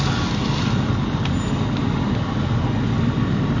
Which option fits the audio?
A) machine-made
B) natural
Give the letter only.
B